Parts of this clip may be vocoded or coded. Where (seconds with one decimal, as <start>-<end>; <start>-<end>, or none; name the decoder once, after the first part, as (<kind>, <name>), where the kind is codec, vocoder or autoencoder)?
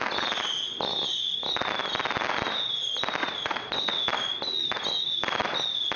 3.2-4.0 (vocoder, WaveNeXt)